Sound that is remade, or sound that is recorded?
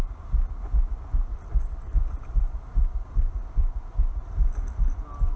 recorded